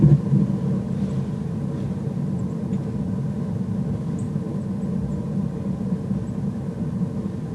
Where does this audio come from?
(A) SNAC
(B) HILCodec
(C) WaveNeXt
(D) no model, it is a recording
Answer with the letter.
D